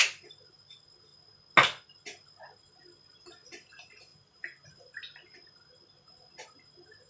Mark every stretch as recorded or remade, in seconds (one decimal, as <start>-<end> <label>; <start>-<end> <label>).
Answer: 0.0-4.1 recorded; 4.1-4.7 remade; 4.7-7.1 recorded